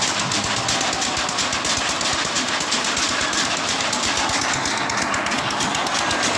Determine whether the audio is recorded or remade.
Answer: recorded